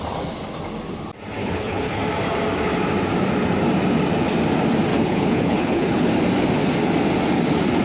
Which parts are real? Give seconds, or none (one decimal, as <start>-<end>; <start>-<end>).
0.0-1.4; 2.0-4.9; 6.1-7.8